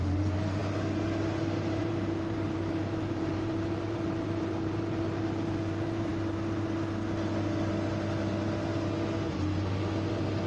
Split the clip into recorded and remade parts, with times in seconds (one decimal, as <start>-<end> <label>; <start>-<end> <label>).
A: 0.0-0.6 remade; 0.6-1.4 recorded; 1.4-6.1 remade; 6.1-10.1 recorded; 10.1-10.5 remade